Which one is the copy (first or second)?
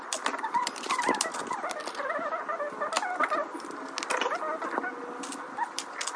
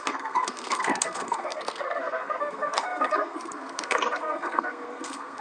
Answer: second